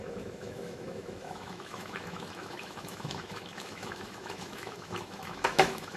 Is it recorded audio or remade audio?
remade